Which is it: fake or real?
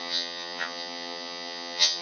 fake